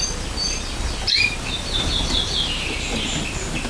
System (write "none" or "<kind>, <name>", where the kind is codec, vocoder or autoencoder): vocoder, BigVGAN v2